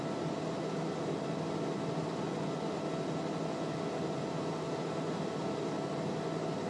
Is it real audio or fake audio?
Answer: real